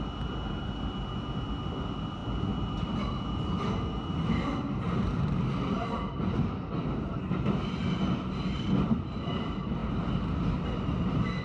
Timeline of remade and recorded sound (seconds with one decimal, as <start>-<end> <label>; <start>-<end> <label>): 0.0-11.4 recorded